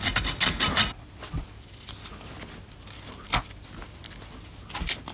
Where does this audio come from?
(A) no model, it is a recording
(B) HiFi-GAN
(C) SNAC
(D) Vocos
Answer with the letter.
A